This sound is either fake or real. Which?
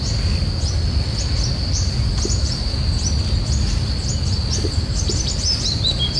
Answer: real